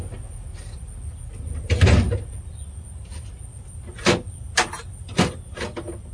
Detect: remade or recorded recorded